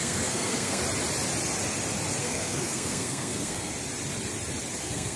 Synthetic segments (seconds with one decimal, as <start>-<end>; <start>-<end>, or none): 0.0-0.8; 2.2-3.7; 4.8-5.2